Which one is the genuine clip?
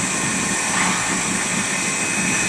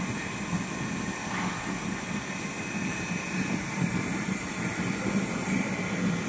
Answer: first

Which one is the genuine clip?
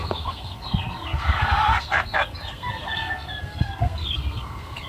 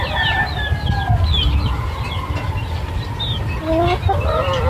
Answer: second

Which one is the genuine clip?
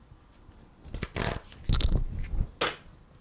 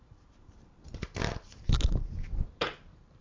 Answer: first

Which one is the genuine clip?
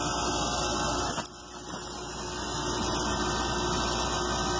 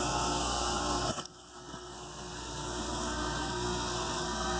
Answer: first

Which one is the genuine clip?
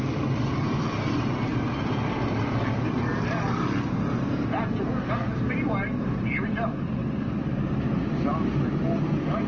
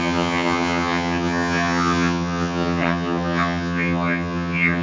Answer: first